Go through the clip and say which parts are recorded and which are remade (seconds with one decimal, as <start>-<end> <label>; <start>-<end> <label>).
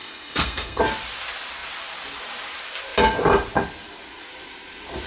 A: 0.0-0.8 remade; 0.8-5.1 recorded